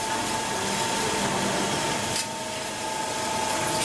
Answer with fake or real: real